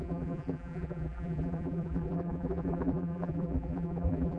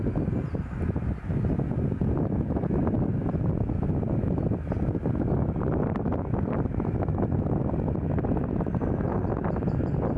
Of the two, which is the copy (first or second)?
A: first